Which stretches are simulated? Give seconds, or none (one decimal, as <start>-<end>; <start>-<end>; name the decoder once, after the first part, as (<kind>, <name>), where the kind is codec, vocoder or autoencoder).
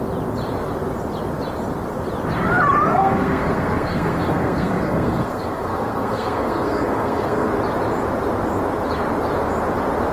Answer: 2.9-7.5 (codec, SNAC)